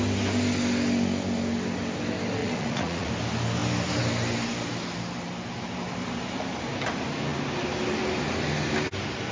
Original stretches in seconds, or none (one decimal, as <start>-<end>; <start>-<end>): 0.0-2.4; 3.1-9.3